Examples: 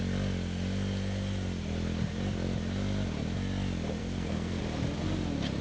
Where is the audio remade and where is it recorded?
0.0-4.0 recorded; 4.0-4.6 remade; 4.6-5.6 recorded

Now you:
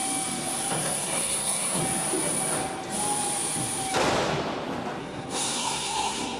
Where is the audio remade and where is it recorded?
0.0-0.8 recorded; 0.8-1.8 remade; 1.8-5.0 recorded; 5.0-6.4 remade

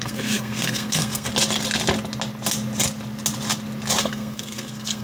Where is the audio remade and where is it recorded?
0.0-1.3 remade; 1.3-4.0 recorded; 4.0-5.0 remade

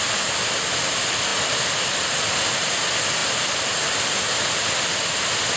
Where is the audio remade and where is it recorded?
0.0-5.6 recorded

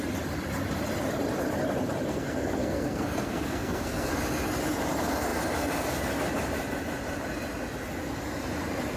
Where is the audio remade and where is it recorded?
0.0-2.1 recorded; 2.1-4.1 remade; 4.1-9.0 recorded

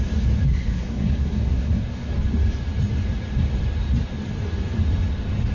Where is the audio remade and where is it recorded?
0.0-0.5 recorded; 0.5-2.1 remade; 2.1-5.5 recorded

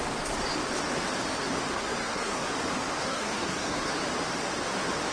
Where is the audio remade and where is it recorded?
0.0-1.7 recorded; 1.7-2.5 remade; 2.5-3.0 recorded; 3.0-3.9 remade; 3.9-5.1 recorded